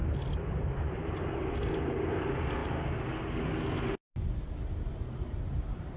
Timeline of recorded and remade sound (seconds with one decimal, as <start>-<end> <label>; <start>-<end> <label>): 0.0-1.0 recorded; 1.0-2.6 remade; 2.6-5.6 recorded; 5.6-6.0 remade